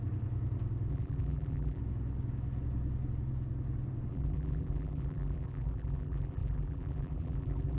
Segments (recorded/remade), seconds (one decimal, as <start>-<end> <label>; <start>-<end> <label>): 0.0-0.9 recorded; 0.9-1.8 remade; 1.8-4.1 recorded; 4.1-7.8 remade